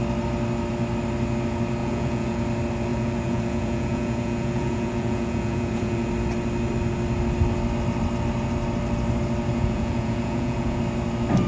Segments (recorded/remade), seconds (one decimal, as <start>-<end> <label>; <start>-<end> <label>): 0.0-1.8 recorded; 1.8-2.4 remade; 2.4-2.9 recorded; 2.9-6.1 remade; 6.1-9.5 recorded; 9.5-10.8 remade; 10.8-11.5 recorded